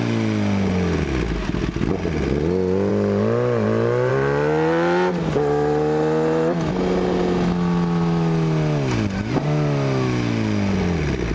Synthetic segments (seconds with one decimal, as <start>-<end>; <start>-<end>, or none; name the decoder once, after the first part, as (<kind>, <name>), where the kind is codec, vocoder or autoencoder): none